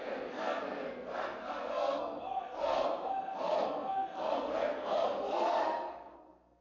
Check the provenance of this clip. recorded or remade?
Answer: remade